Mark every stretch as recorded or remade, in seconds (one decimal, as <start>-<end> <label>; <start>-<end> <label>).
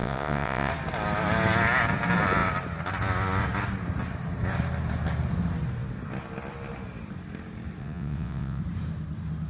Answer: 0.0-0.7 remade; 0.7-7.8 recorded; 7.8-8.6 remade; 8.6-9.5 recorded